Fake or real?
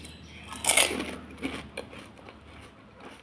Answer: real